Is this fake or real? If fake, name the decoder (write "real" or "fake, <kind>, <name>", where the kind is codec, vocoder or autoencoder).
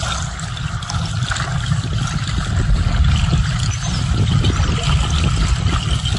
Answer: real